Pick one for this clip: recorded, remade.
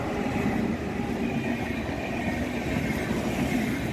recorded